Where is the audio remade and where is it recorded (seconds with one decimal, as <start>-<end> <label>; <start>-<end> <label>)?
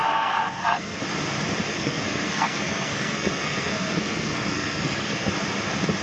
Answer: 0.0-1.0 remade; 1.0-1.7 recorded; 1.7-5.3 remade; 5.3-6.0 recorded